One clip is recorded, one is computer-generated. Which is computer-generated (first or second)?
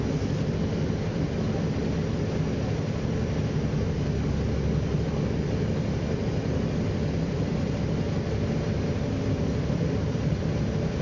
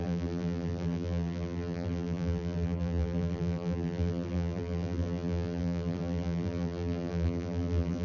second